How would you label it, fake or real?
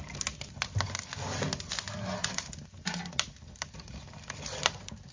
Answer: real